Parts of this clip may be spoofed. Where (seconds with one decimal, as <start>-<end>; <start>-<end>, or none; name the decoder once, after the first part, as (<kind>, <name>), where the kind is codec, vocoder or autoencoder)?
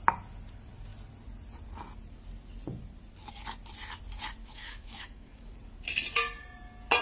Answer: 4.4-5.5 (autoencoder, DAC-VAE)